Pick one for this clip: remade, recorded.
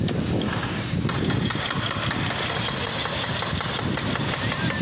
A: remade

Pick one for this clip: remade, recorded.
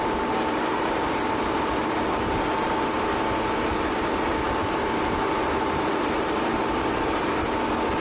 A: recorded